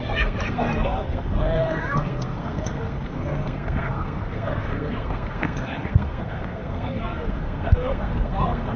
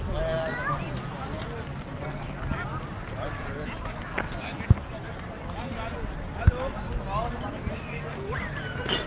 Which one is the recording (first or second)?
second